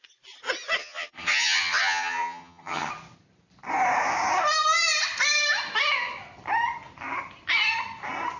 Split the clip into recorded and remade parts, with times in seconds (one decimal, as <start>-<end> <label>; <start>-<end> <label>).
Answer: 0.0-0.8 recorded; 0.8-2.9 remade; 2.9-8.4 recorded